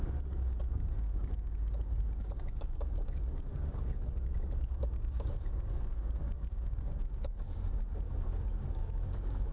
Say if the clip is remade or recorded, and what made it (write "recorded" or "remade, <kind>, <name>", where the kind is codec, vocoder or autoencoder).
remade, codec, DAC